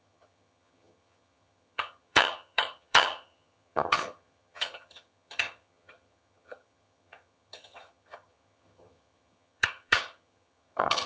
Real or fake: fake